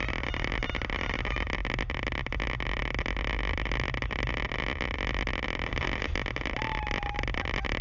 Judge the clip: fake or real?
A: real